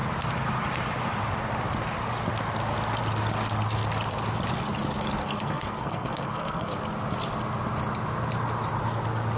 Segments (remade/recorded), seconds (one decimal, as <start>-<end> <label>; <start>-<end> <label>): 0.0-5.2 recorded; 5.2-6.8 remade; 6.8-9.4 recorded